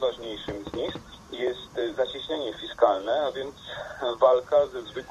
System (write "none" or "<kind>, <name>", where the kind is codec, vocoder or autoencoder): vocoder, BigVGAN v2